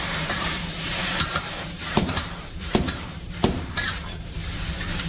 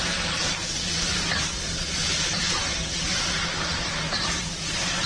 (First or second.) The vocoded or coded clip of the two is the first